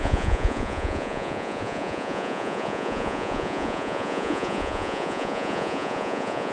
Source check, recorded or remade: remade